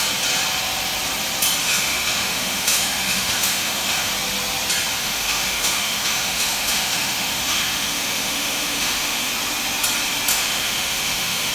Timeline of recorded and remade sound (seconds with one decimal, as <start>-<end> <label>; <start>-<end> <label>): 0.0-1.6 recorded; 1.6-4.1 remade; 4.1-5.0 recorded; 5.0-9.3 remade; 9.3-10.3 recorded; 10.3-11.5 remade